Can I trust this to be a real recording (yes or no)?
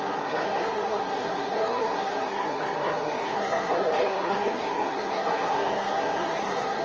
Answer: no